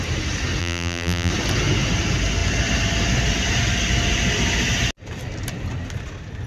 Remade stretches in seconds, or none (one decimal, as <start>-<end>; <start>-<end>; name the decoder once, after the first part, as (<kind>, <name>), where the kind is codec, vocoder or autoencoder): 0.6-1.3 (vocoder, BigVGAN v2)